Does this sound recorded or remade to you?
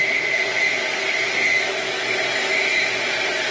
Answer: recorded